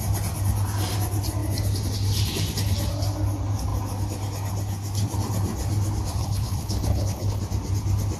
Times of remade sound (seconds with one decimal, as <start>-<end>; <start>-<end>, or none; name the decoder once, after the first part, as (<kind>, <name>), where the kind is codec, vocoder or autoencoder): 6.2-7.4 (codec, HILCodec)